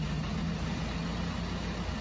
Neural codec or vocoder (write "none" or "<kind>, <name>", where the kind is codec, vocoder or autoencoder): none